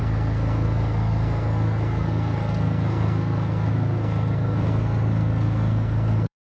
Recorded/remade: remade